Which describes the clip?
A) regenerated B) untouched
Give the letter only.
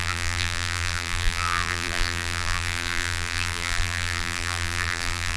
A